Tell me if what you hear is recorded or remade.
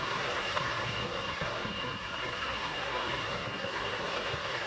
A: remade